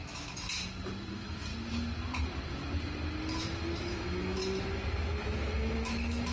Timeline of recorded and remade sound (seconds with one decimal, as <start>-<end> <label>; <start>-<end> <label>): 0.0-1.1 recorded; 1.1-1.5 remade; 1.5-3.4 recorded; 3.4-4.4 remade; 4.4-5.2 recorded; 5.2-6.3 remade